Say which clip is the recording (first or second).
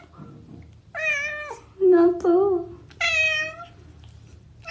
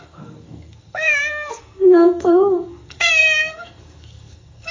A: first